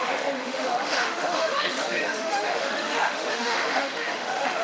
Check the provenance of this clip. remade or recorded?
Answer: remade